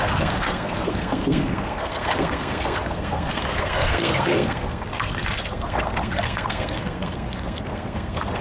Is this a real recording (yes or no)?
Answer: no